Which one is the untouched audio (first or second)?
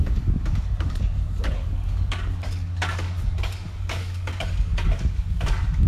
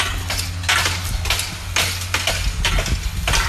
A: second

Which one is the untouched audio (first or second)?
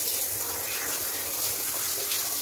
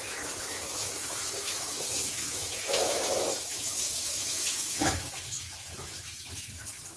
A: first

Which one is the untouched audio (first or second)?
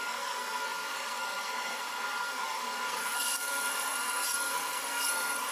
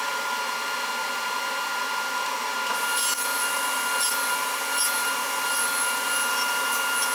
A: second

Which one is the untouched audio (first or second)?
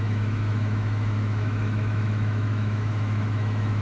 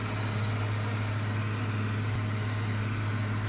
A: second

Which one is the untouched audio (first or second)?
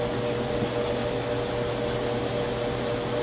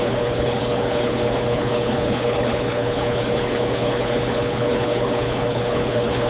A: first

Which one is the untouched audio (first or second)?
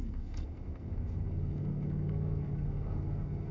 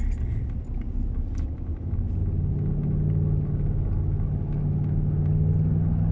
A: second